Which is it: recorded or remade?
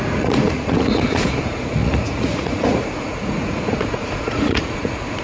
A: remade